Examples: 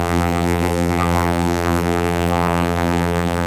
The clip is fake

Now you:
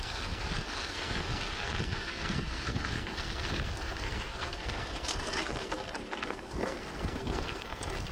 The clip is fake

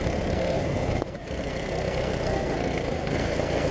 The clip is fake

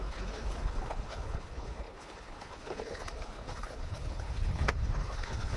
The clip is fake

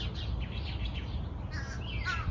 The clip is real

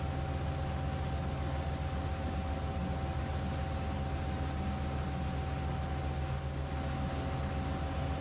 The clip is real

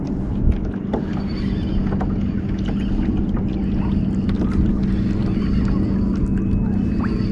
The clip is real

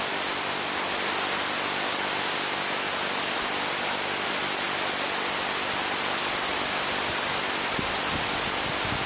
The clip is real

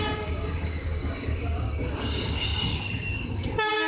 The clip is fake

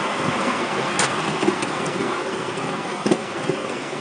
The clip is fake